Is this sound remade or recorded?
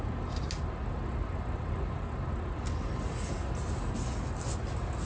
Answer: recorded